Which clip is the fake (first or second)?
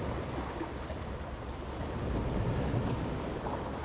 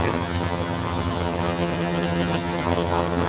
second